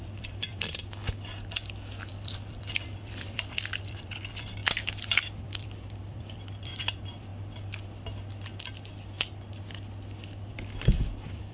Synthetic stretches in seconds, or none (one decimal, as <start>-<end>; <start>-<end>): 0.0-0.8; 2.1-4.6; 5.4-7.3; 10.5-11.5